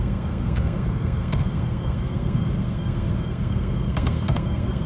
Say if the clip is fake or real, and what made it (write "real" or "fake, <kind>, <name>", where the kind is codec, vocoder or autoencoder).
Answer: fake, codec, SNAC